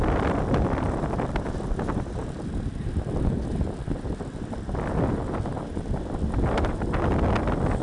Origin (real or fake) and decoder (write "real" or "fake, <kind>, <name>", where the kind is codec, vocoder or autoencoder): real